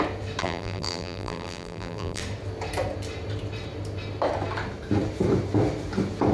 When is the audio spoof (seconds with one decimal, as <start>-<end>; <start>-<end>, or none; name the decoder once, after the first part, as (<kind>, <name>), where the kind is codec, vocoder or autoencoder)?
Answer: 0.4-2.2 (vocoder, BigVGAN v2)